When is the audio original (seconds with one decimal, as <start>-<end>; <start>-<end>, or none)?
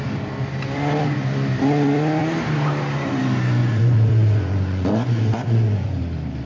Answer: 0.0-3.6; 6.0-6.5